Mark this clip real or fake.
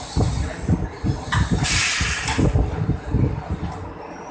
real